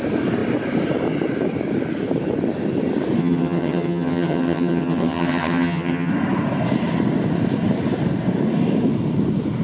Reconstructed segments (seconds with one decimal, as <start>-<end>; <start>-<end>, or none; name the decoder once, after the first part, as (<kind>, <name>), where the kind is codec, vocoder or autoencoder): 3.2-6.1 (vocoder, HiFi-GAN)